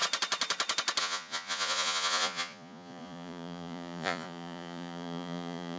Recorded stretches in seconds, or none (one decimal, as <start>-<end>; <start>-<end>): 0.0-1.0